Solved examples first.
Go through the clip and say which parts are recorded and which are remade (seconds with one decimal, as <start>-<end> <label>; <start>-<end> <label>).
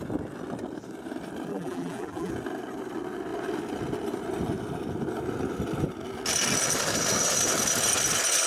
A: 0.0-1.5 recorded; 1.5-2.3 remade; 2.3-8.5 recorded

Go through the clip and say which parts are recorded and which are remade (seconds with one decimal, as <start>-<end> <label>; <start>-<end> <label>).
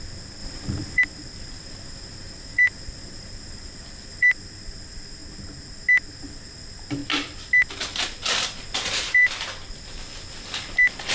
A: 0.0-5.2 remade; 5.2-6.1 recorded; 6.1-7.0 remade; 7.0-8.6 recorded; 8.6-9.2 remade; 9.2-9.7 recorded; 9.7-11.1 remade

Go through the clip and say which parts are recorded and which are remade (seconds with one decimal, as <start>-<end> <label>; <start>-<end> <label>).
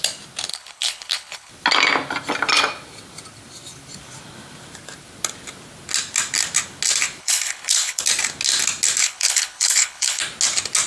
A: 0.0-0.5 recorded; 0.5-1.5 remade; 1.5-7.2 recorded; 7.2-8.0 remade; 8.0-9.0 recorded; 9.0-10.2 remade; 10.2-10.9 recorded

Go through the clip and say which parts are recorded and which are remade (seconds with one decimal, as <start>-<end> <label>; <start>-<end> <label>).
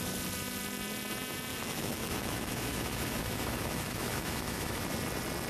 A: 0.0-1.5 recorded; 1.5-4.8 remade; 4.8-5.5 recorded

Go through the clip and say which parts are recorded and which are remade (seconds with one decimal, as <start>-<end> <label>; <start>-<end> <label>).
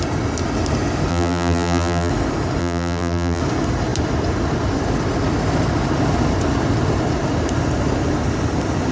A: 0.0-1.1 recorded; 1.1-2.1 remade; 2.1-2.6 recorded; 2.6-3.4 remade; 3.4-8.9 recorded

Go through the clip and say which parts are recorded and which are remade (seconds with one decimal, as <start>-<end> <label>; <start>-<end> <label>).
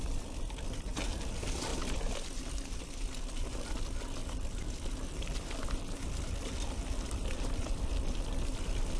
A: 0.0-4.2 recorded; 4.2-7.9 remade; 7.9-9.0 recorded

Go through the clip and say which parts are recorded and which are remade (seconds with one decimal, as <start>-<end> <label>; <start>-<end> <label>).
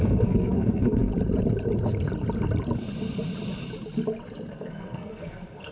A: 0.0-1.1 remade; 1.1-4.5 recorded; 4.5-5.7 remade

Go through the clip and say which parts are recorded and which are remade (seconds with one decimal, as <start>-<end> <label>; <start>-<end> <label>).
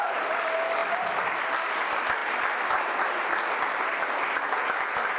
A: 0.0-5.2 recorded